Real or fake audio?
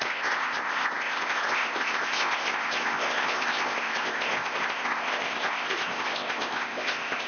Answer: fake